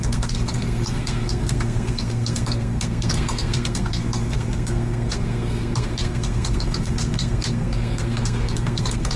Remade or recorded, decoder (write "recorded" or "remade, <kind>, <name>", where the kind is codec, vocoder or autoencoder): remade, codec, SNAC